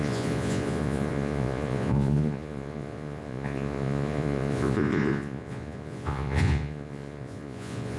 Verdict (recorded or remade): remade